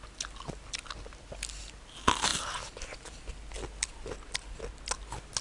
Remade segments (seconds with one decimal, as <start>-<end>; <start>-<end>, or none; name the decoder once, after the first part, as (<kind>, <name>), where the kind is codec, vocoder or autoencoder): none